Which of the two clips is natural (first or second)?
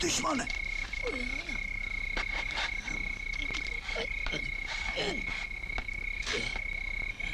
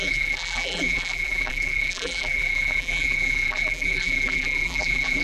first